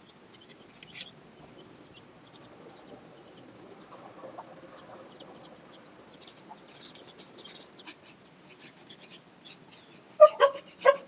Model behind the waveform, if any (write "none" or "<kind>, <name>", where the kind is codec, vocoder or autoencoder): none